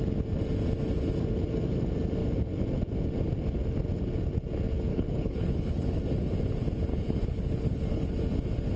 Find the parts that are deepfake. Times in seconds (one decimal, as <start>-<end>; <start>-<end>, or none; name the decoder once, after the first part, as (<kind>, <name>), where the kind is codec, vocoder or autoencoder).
4.9-6.0 (codec, HILCodec); 6.9-8.1